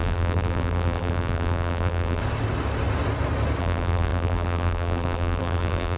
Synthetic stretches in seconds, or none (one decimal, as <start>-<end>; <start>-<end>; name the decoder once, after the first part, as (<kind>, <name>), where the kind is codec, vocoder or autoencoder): 0.0-2.2 (vocoder, BigVGAN v2); 3.6-6.0

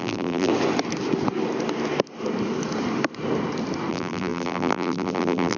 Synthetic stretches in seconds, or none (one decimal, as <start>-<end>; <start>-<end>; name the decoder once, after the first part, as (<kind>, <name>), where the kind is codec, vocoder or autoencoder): 0.0-0.5 (vocoder, BigVGAN v2); 3.9-5.6